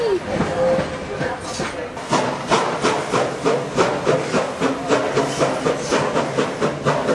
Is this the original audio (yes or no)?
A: yes